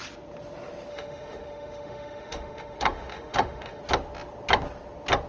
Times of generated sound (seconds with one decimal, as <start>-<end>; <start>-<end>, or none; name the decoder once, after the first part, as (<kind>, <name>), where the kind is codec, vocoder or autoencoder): 0.9-3.8 (autoencoder, DAC-VAE)